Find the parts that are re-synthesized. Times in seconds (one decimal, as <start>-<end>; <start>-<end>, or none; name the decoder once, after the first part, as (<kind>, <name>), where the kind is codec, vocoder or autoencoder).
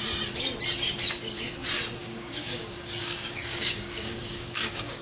2.0-5.0 (codec, DAC)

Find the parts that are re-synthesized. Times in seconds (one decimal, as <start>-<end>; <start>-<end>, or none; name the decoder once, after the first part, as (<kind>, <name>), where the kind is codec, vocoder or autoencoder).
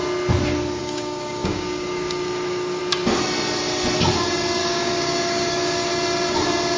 0.8-2.8 (codec, DAC); 4.6-5.9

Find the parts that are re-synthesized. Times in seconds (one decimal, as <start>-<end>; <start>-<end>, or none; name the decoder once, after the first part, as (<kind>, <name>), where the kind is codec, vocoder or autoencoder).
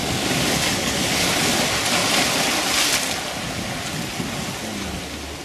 0.0-1.3 (codec, DAC)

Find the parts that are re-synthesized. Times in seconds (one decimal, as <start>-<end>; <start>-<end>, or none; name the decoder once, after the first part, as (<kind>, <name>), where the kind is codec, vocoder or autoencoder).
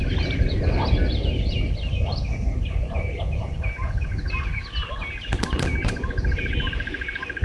none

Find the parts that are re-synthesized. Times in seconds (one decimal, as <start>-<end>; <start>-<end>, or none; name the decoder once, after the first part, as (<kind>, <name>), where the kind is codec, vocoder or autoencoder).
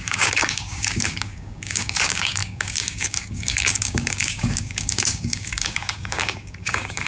0.0-7.1 (codec, DAC)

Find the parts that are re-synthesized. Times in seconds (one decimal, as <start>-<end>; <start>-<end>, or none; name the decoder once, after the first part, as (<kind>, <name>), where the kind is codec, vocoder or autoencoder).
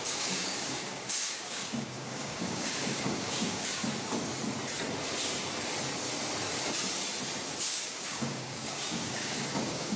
0.0-3.8 (codec, DAC); 7.6-10.0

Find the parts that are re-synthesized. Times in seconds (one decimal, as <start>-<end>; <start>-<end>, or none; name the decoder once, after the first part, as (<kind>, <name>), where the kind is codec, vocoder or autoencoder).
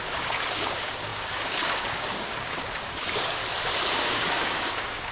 0.0-3.4 (codec, DAC); 4.0-5.1